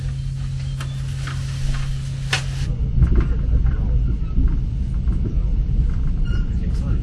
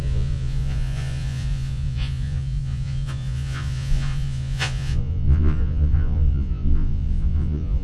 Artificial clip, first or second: second